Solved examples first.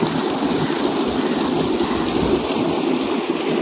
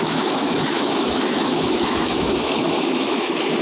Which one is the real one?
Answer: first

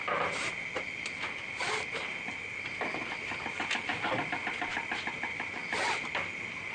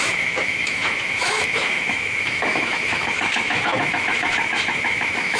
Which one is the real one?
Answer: first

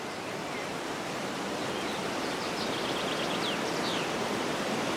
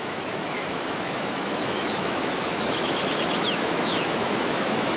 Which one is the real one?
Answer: first